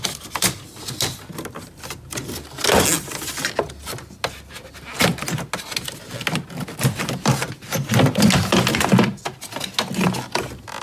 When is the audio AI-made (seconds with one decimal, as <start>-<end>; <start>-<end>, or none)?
none